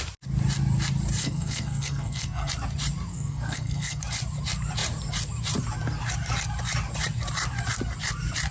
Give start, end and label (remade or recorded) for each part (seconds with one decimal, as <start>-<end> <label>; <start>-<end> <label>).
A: 0.0-1.2 recorded; 1.2-2.5 remade; 2.5-3.1 recorded; 3.1-4.0 remade; 4.0-8.5 recorded